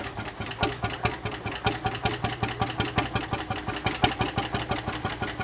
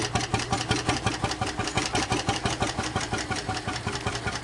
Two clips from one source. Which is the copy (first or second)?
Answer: second